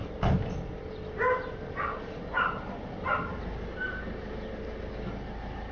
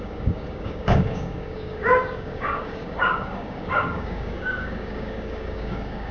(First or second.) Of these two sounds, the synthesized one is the second